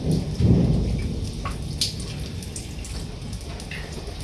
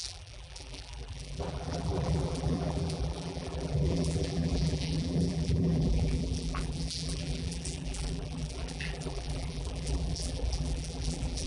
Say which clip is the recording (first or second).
first